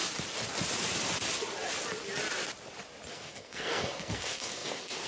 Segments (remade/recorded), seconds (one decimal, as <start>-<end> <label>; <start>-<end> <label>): 0.0-3.1 recorded; 3.1-5.1 remade

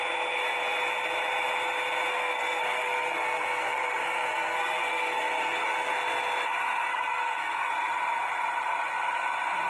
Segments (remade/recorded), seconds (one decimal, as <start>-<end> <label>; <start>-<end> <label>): 0.0-2.1 recorded; 2.1-5.9 remade; 5.9-6.9 recorded; 6.9-7.7 remade; 7.7-9.7 recorded

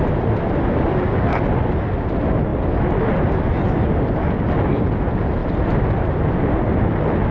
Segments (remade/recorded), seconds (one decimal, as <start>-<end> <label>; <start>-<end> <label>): 0.0-7.3 recorded